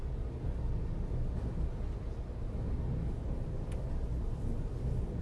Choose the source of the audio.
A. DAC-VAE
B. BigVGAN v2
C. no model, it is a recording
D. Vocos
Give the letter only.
C